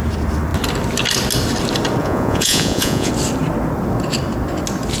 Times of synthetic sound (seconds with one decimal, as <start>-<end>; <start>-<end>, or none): 2.0-3.1